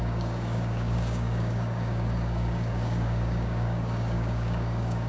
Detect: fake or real fake